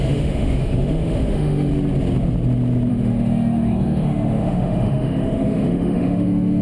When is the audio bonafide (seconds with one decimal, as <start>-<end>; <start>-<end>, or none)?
1.7-2.9